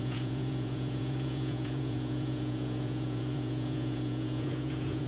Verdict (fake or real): fake